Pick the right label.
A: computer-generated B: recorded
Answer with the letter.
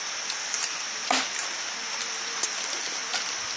B